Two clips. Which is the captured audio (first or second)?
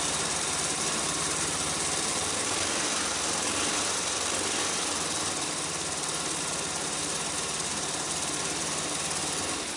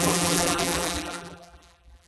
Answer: first